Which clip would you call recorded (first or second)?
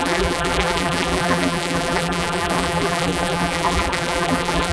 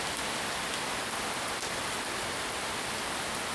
second